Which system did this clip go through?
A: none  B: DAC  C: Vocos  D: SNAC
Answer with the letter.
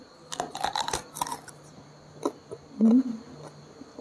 A